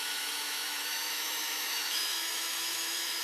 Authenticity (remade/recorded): remade